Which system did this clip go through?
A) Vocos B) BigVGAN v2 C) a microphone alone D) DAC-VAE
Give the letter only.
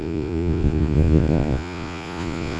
A